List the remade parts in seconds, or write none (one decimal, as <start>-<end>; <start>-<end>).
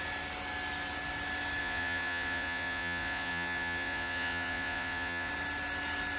1.6-5.3